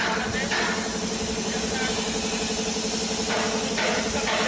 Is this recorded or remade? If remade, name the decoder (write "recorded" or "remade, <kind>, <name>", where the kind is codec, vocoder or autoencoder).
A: recorded